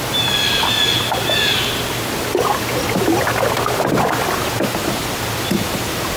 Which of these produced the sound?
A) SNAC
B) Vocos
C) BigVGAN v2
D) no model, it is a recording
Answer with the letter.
D